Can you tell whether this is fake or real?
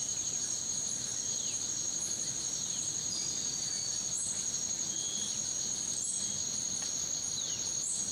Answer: real